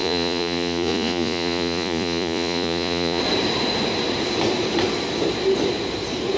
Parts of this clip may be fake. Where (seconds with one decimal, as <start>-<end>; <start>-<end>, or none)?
0.0-3.2